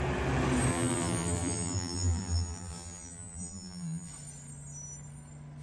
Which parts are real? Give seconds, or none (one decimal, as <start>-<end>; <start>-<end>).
0.0-0.7; 4.1-5.6